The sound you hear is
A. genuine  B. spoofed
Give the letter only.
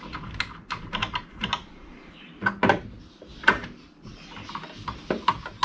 A